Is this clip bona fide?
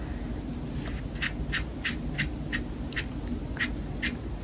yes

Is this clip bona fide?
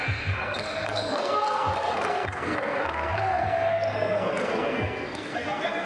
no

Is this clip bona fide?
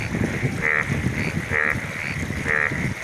no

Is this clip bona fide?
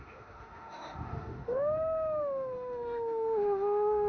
no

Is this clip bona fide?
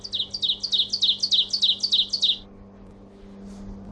yes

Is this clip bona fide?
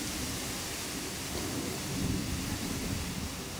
yes